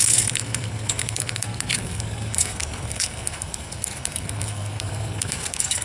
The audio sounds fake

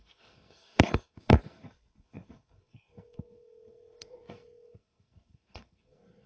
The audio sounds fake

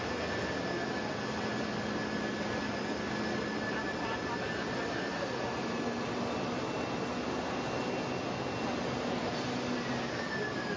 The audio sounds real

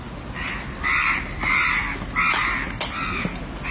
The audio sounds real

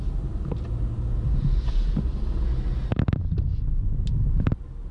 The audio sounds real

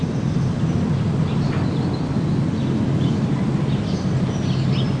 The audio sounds real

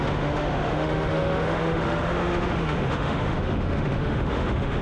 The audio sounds fake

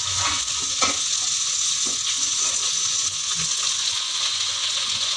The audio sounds fake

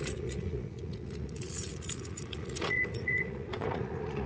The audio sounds fake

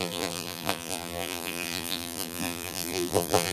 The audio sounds fake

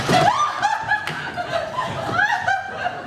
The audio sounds real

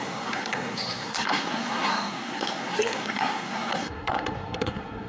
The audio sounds fake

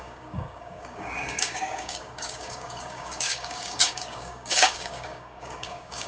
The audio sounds fake